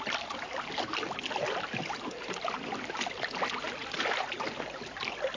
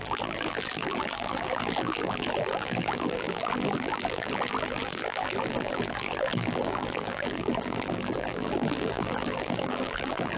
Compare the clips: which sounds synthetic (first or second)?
second